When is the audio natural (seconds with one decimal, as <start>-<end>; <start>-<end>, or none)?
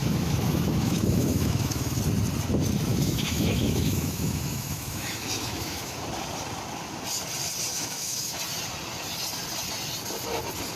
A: 2.0-2.9; 6.0-7.7; 8.4-10.8